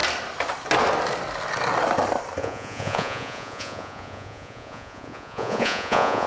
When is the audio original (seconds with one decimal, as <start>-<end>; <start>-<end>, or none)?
0.0-2.4